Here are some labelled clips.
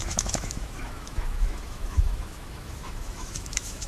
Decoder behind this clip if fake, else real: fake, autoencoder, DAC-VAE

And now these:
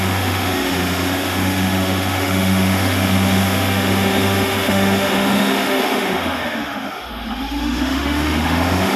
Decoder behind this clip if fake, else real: fake, autoencoder, DAC-VAE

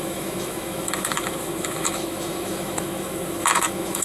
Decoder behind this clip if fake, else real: fake, autoencoder, DAC-VAE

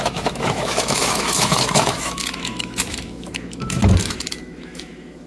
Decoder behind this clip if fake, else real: fake, autoencoder, DAC-VAE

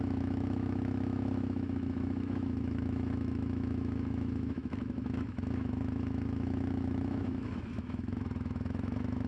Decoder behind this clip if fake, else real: fake, autoencoder, DAC-VAE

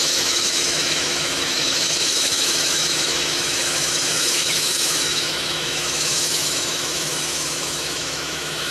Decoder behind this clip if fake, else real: fake, autoencoder, DAC-VAE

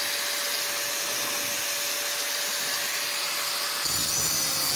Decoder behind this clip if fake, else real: real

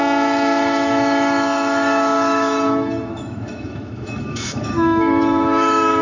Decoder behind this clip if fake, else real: fake, autoencoder, DAC-VAE